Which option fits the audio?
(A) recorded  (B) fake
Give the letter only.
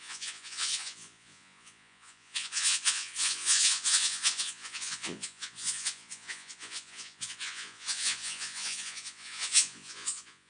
B